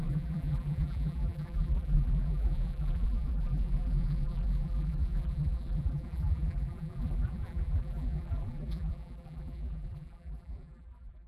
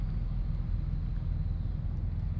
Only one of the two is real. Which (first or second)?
second